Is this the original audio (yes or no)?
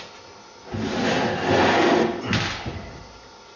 yes